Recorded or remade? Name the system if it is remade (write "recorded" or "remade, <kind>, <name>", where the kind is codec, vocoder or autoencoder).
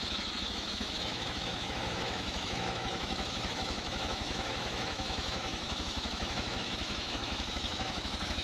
remade, autoencoder, DAC-VAE